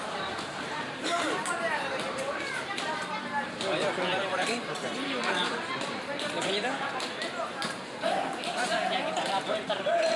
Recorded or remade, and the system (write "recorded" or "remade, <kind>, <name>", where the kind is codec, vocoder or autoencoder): remade, vocoder, BigVGAN v2